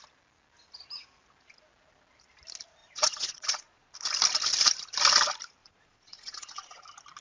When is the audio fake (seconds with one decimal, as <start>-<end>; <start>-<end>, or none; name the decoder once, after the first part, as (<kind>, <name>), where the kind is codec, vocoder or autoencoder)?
2.8-3.9 (vocoder, Vocos); 5.6-6.8

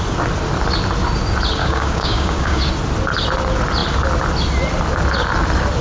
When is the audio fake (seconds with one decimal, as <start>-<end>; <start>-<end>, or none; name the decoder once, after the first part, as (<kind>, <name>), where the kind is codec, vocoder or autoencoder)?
1.6-2.7 (codec, DAC)

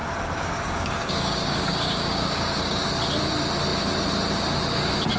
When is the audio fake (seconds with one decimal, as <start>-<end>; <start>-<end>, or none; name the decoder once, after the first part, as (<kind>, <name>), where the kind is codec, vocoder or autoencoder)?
0.0-2.9 (codec, DAC)

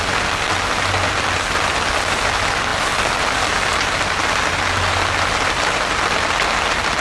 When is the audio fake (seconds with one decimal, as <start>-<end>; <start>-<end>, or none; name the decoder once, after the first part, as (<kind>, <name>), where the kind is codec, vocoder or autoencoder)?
none